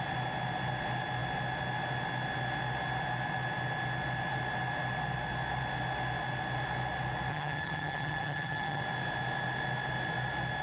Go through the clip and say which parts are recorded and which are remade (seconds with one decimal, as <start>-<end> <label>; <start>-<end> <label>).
0.0-7.3 recorded; 7.3-8.8 remade; 8.8-10.6 recorded